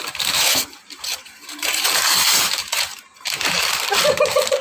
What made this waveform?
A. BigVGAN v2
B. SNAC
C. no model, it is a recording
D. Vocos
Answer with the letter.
A